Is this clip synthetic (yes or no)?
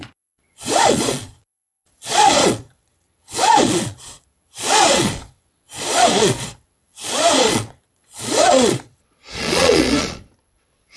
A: yes